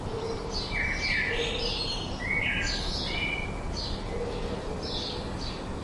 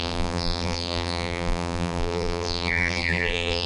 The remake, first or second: second